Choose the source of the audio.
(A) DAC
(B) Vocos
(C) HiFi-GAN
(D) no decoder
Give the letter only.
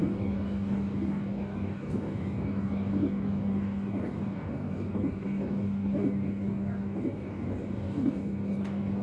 A